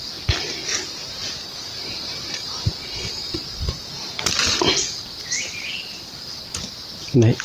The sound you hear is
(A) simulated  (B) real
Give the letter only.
B